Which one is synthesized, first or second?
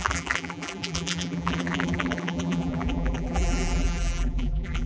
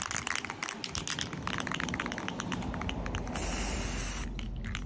first